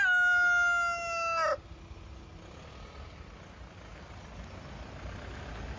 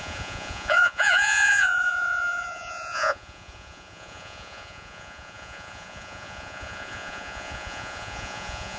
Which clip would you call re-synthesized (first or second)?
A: second